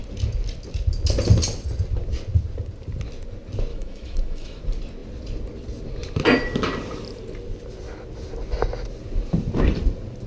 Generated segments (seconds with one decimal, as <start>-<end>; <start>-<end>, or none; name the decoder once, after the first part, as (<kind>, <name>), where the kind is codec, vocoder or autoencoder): 3.7-4.6 (autoencoder, DAC-VAE)

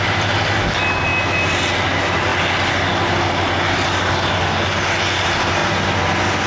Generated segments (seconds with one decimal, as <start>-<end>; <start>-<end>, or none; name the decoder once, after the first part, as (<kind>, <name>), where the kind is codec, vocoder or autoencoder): none

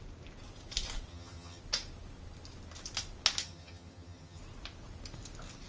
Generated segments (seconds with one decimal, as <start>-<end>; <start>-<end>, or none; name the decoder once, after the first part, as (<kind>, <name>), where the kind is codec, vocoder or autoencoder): 1.1-1.6 (vocoder, HiFi-GAN); 3.4-4.4

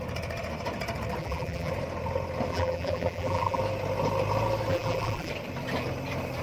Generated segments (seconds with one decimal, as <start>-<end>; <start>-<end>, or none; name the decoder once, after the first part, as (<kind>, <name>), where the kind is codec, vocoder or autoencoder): 1.2-1.7 (vocoder, BigVGAN v2); 2.5-3.6; 4.7-5.3

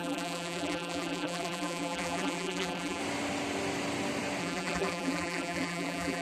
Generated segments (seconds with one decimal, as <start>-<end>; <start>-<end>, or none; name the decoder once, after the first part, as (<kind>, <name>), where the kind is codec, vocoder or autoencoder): 0.0-3.0 (vocoder, BigVGAN v2); 4.4-6.2

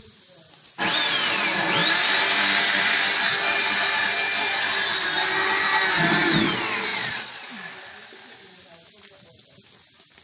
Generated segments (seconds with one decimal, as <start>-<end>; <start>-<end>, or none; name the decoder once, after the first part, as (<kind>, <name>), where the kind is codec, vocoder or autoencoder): 6.9-7.5 (vocoder, Vocos)

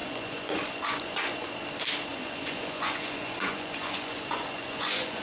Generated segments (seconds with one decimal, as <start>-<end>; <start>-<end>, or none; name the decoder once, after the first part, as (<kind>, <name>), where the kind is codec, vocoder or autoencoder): 0.0-1.5 (vocoder, Vocos); 2.1-5.2